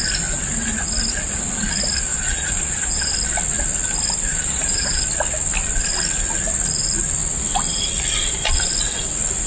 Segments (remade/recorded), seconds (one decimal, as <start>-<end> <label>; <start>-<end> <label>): 0.0-2.1 recorded; 2.1-3.1 remade; 3.1-4.3 recorded; 4.3-5.0 remade; 5.0-9.5 recorded